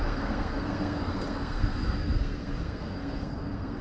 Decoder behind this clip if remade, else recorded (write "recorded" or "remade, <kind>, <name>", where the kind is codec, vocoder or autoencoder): remade, codec, SNAC